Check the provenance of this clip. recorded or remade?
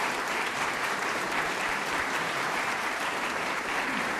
remade